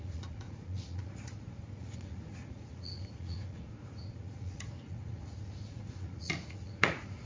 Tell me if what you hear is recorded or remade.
remade